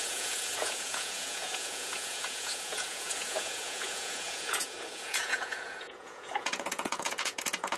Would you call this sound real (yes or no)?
no